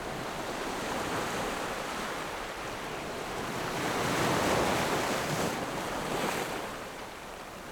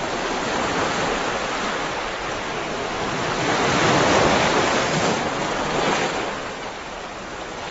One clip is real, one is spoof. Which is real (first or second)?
second